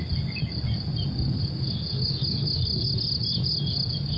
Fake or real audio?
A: real